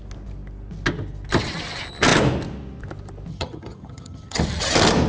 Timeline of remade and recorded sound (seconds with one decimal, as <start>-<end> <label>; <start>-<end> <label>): 0.0-3.3 recorded; 3.3-4.4 remade; 4.4-5.1 recorded